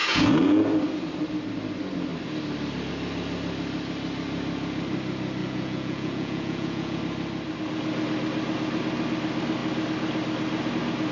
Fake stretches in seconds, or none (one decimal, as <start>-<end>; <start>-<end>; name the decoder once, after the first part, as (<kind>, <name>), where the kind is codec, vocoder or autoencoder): 0.0-0.6 (vocoder, Vocos); 5.4-7.0